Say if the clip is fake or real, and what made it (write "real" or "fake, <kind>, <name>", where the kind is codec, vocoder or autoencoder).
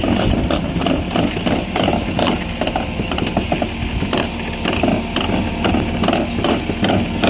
real